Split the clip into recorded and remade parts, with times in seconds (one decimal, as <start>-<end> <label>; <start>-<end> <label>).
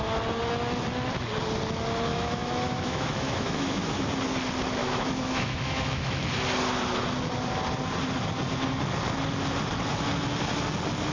0.0-2.1 recorded; 2.1-4.1 remade; 4.1-4.8 recorded; 4.8-6.2 remade; 6.2-11.1 recorded